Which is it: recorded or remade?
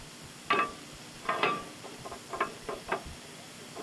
remade